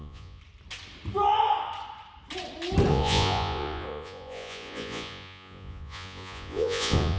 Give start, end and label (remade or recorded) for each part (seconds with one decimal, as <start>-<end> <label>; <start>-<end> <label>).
0.0-0.4 remade; 0.4-2.9 recorded; 2.9-7.2 remade